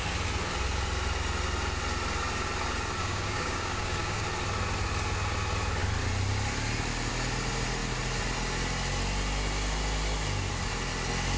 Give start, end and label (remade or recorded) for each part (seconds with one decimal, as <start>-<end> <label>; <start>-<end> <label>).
0.0-3.0 recorded; 3.0-4.2 remade; 4.2-11.4 recorded